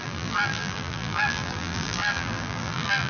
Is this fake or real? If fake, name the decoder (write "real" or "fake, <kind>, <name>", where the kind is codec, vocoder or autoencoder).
fake, vocoder, BigVGAN v2